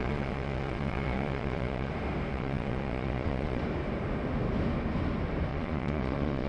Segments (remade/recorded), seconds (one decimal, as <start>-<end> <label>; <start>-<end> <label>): 0.0-1.9 remade; 1.9-2.3 recorded; 2.3-3.6 remade; 3.6-5.5 recorded; 5.5-6.5 remade